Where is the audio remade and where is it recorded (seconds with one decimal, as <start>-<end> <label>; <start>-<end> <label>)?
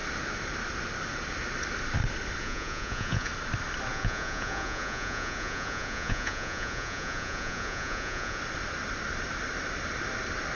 0.0-2.4 recorded; 2.4-3.3 remade; 3.3-3.9 recorded; 3.9-8.4 remade; 8.4-10.5 recorded